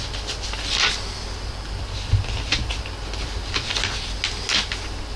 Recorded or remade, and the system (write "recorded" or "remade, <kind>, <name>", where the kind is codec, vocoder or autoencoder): recorded